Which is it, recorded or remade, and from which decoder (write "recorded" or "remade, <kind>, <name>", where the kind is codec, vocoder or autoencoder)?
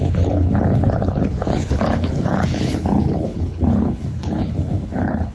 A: remade, codec, HILCodec